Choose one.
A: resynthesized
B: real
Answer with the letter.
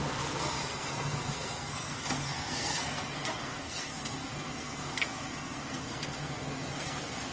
A